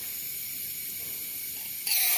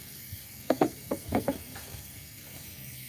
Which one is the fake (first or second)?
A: second